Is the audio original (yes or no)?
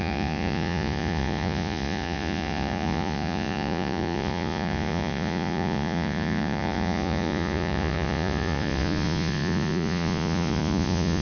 no